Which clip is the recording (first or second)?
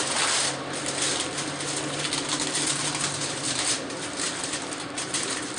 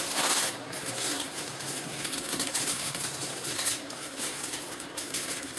first